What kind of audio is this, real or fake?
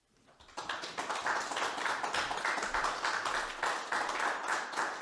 real